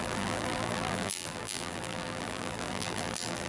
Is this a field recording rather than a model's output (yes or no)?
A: no